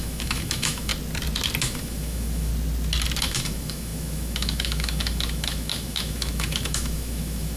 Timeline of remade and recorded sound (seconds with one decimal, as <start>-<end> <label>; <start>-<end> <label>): 0.0-0.9 remade; 0.9-1.6 recorded; 1.6-2.5 remade; 2.5-3.2 recorded; 3.2-7.6 remade